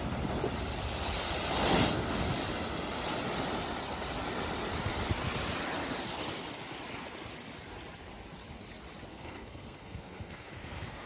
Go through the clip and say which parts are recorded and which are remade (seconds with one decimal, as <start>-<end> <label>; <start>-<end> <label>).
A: 0.0-9.1 recorded; 9.1-11.1 remade